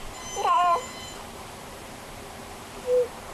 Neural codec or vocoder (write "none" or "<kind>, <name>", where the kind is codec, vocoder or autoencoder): vocoder, BigVGAN v2